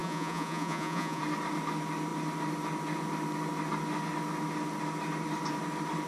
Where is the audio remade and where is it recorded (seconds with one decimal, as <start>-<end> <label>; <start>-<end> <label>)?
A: 0.0-1.2 remade; 1.2-6.1 recorded